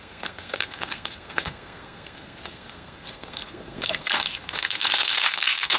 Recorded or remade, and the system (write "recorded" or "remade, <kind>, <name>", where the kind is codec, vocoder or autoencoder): remade, codec, SNAC